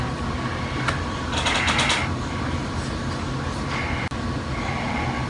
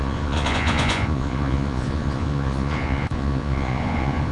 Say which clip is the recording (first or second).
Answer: first